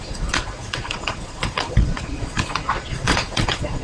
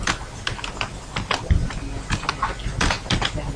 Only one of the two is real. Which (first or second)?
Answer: second